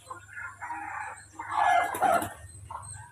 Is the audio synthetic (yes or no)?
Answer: no